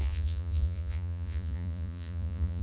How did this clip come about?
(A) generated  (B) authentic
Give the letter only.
A